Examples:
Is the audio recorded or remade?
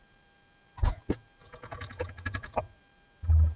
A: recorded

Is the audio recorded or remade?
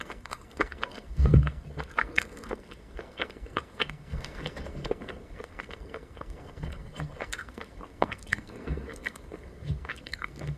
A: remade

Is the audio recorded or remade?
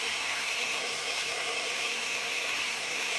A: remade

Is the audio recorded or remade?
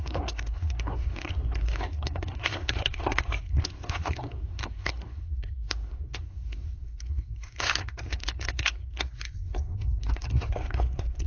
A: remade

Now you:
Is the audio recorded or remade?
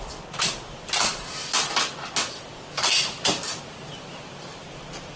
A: recorded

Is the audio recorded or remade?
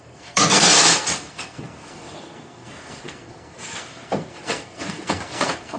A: remade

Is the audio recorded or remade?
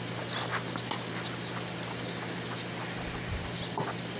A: recorded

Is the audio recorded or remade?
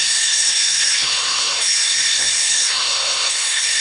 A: remade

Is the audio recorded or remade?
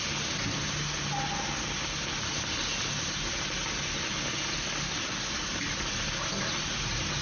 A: recorded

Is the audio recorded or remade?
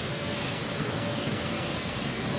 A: remade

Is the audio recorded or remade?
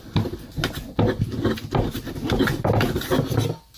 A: recorded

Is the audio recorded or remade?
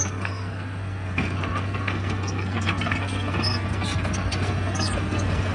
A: remade